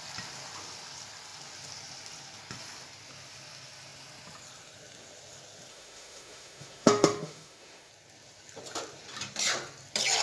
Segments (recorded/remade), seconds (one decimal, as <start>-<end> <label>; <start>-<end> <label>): 0.0-5.7 recorded; 5.7-7.9 remade; 7.9-10.2 recorded